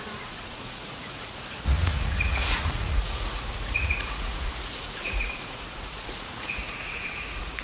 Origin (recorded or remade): remade